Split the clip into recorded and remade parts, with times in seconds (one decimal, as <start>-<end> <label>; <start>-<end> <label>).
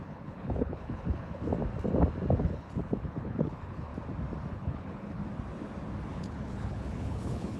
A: 0.0-1.5 remade; 1.5-2.4 recorded; 2.4-3.9 remade; 3.9-4.5 recorded; 4.5-5.2 remade; 5.2-6.1 recorded; 6.1-7.6 remade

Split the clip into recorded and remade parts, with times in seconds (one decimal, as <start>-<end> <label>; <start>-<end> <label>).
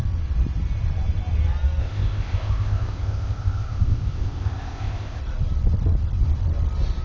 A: 0.0-1.8 recorded; 1.8-5.2 remade; 5.2-7.0 recorded